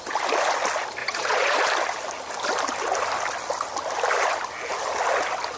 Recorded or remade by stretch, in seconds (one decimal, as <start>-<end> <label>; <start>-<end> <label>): 0.0-1.0 recorded; 1.0-1.6 remade; 1.6-5.6 recorded